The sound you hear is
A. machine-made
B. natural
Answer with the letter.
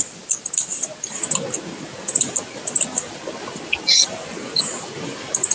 B